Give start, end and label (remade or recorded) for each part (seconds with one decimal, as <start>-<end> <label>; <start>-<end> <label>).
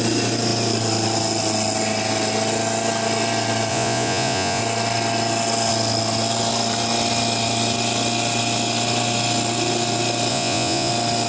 0.0-3.7 recorded; 3.7-4.6 remade; 4.6-10.3 recorded; 10.3-10.9 remade; 10.9-11.3 recorded